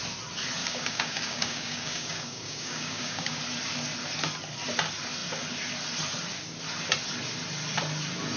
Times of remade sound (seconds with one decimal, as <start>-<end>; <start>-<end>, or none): 0.6-3.4